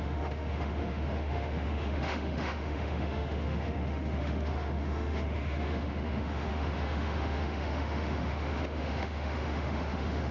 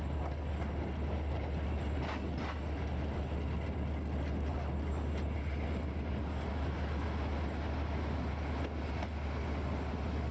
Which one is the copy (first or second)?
first